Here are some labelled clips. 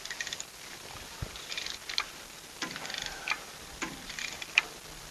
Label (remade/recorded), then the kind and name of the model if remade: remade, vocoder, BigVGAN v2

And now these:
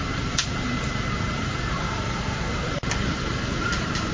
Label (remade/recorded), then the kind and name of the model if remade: remade, vocoder, BigVGAN v2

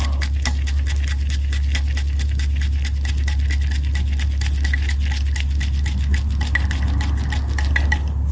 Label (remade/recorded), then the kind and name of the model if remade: recorded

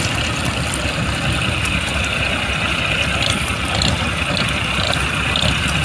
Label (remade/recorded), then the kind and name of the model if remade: remade, vocoder, BigVGAN v2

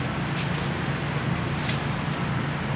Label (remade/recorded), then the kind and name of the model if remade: recorded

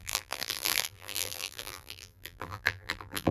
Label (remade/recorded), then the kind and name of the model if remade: remade, vocoder, BigVGAN v2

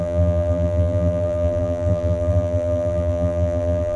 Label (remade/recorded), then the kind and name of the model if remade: remade, vocoder, BigVGAN v2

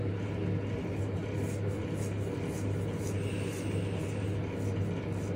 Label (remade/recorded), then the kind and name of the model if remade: recorded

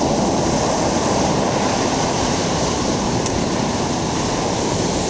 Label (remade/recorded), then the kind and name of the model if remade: remade, vocoder, BigVGAN v2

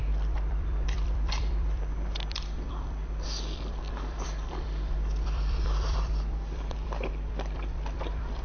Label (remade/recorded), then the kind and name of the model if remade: remade, vocoder, BigVGAN v2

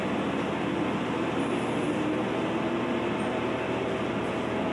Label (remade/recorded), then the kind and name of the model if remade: recorded